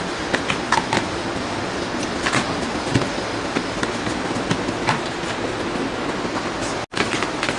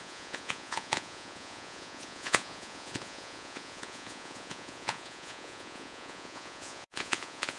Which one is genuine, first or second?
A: first